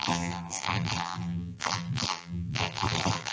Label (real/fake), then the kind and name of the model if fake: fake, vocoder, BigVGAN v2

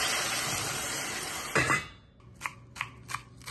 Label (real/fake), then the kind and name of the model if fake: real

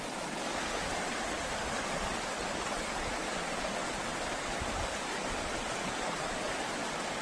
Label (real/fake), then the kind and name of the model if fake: real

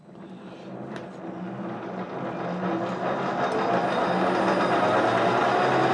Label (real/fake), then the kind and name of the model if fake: real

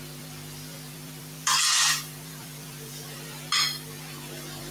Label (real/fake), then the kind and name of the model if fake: fake, vocoder, BigVGAN v2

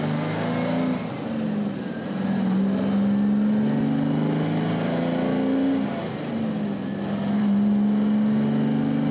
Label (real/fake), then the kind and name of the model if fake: real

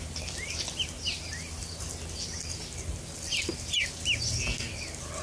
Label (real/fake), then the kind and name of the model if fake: real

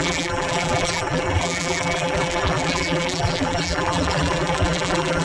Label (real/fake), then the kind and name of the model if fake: fake, vocoder, BigVGAN v2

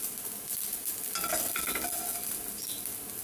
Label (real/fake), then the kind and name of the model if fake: real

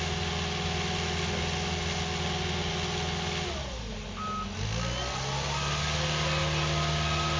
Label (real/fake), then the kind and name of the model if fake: real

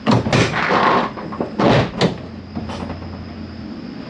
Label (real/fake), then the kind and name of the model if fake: real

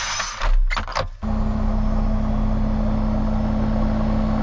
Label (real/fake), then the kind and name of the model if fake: real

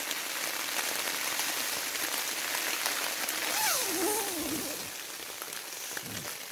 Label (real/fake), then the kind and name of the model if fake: real